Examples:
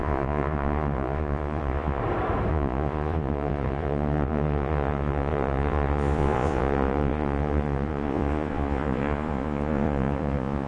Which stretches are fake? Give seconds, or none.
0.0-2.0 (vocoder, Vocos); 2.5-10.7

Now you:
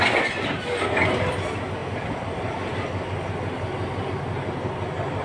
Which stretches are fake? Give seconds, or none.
none

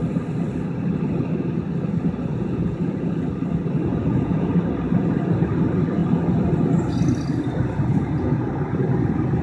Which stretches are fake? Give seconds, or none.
2.3-3.3 (vocoder, Vocos); 3.9-4.5; 7.9-8.5

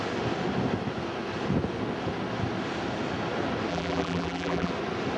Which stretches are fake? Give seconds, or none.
3.7-4.7 (vocoder, BigVGAN v2)

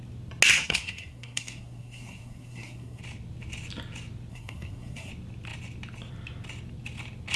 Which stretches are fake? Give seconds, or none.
0.5-3.0 (codec, SNAC); 4.3-5.1

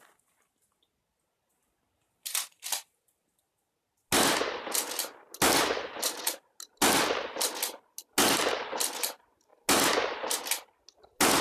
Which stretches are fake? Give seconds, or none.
none

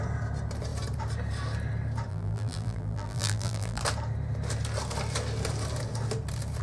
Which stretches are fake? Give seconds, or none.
2.1-3.8 (vocoder, BigVGAN v2)

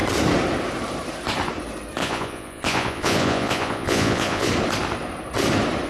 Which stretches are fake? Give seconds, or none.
2.0-4.5 (vocoder, Vocos)